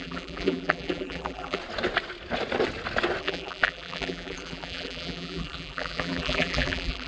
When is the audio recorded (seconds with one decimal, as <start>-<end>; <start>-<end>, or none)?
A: 1.6-3.2